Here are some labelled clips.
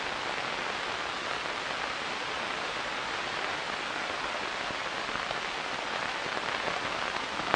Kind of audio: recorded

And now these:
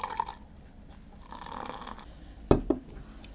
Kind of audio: recorded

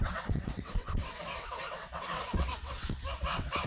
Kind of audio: remade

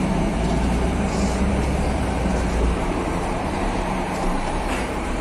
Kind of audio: remade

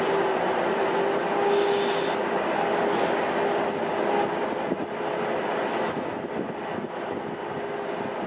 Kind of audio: recorded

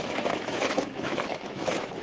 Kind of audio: remade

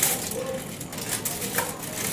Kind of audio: recorded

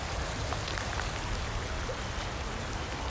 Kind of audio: recorded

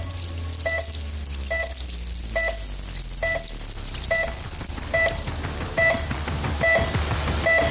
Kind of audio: recorded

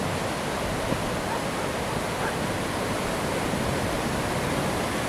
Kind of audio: recorded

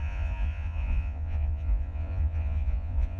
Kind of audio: remade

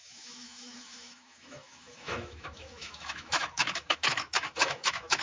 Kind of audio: remade